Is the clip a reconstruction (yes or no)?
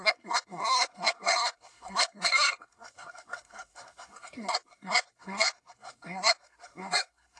yes